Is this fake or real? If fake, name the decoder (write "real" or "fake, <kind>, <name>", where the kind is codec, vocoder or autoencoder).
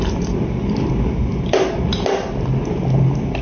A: real